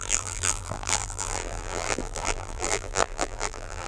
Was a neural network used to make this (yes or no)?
yes